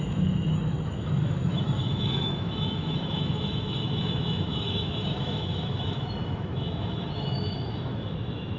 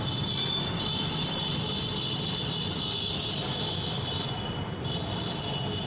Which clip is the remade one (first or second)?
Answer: first